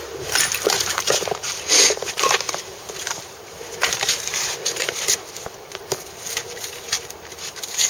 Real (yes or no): no